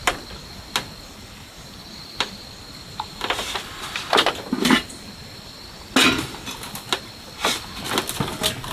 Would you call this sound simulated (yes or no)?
no